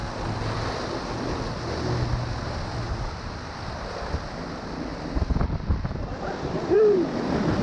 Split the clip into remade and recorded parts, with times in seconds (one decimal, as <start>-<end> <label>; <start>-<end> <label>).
0.0-7.6 recorded